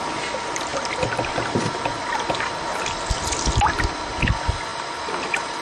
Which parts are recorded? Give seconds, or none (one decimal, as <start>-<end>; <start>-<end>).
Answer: 0.0-4.7